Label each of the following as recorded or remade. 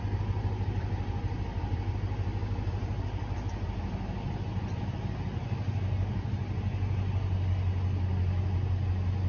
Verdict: recorded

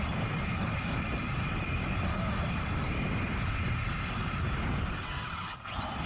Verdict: recorded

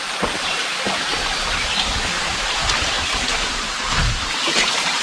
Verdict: recorded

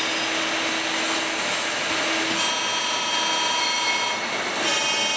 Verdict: recorded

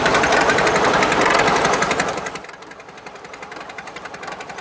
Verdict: recorded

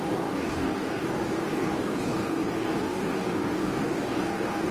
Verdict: remade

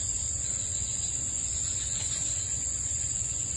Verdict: remade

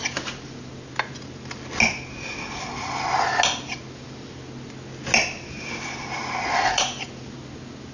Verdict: recorded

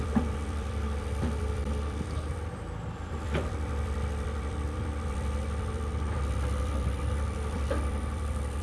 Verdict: remade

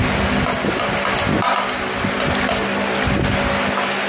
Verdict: recorded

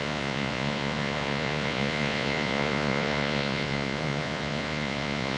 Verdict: remade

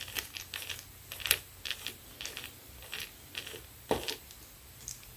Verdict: recorded